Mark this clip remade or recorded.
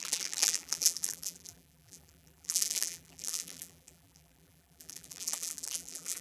remade